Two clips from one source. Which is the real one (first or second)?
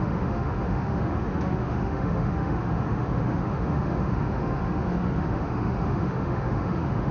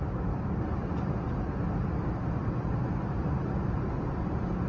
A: second